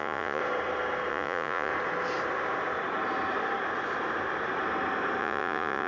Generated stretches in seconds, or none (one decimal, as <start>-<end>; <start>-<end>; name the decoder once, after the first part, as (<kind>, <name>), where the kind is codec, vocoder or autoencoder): 0.0-0.4 (vocoder, Vocos); 1.1-1.7; 5.2-5.9